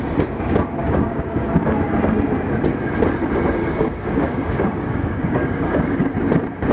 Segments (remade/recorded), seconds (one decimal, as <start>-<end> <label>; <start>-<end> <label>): 0.0-0.8 recorded; 0.8-1.5 remade; 1.5-3.6 recorded; 3.6-6.1 remade; 6.1-6.7 recorded